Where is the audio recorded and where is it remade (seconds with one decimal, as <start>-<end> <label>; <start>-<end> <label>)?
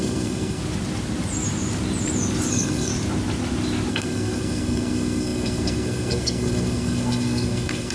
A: 0.0-0.6 remade; 0.6-2.5 recorded; 2.5-2.9 remade; 2.9-3.9 recorded; 3.9-7.9 remade